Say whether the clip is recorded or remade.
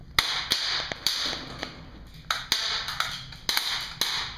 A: recorded